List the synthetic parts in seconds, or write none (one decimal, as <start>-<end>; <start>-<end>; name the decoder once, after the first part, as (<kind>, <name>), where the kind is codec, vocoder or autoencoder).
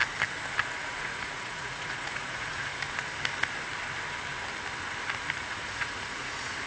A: 0.8-2.7 (vocoder, Vocos); 5.4-6.7